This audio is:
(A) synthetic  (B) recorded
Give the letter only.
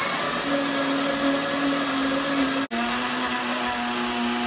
B